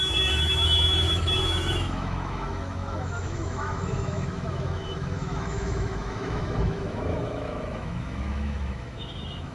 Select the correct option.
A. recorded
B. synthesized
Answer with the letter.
B